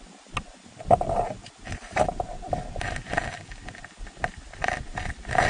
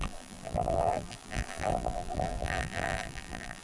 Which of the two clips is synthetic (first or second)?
second